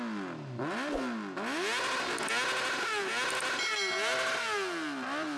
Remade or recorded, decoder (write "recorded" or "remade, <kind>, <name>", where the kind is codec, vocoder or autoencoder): recorded